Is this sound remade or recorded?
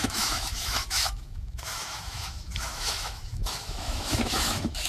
remade